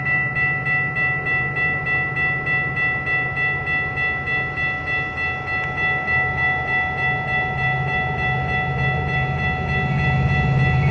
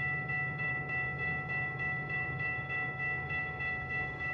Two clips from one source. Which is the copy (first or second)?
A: second